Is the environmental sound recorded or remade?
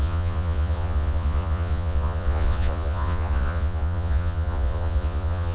remade